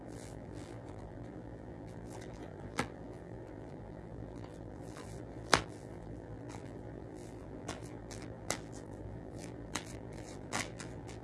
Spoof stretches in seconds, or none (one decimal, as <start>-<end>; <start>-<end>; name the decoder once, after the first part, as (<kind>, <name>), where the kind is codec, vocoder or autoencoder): 0.0-11.2 (vocoder, BigVGAN v2)